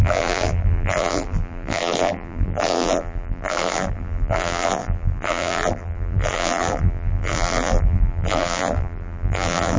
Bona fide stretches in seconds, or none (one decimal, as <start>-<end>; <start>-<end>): none